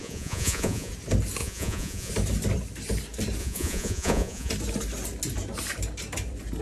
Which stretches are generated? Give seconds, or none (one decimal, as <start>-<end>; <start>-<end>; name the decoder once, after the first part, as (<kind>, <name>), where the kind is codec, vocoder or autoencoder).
0.0-0.9 (vocoder, Vocos); 1.4-2.1; 3.4-4.5